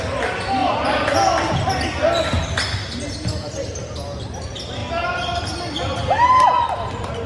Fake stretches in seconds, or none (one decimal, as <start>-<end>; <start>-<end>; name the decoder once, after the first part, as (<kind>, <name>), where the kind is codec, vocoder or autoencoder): none